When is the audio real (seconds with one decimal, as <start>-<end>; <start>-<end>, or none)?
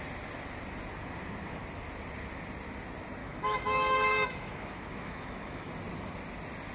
0.0-3.2; 5.7-6.7